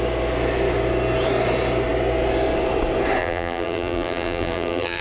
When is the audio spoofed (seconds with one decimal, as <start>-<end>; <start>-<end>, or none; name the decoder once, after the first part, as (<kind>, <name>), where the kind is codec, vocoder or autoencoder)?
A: 3.2-5.0 (vocoder, BigVGAN v2)